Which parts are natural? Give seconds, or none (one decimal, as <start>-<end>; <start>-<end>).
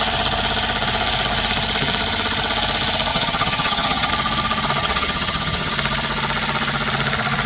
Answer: 0.0-3.1; 4.1-4.8; 5.7-7.5